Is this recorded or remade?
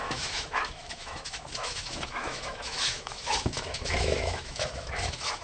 remade